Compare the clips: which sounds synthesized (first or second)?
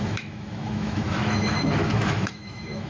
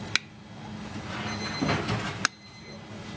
first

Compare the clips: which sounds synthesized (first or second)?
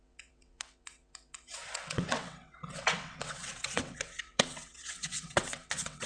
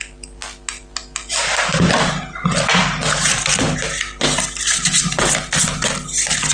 first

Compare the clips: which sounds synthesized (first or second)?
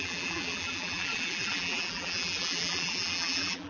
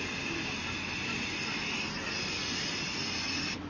first